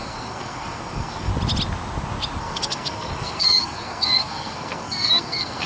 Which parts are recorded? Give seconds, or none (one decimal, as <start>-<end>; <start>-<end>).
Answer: 1.3-2.4